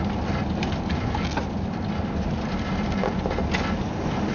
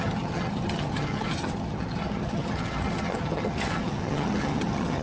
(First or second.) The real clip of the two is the first